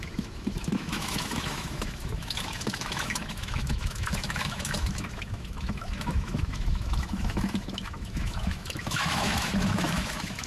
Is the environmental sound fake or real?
fake